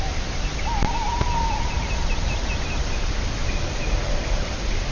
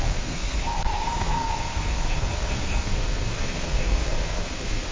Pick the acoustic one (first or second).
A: first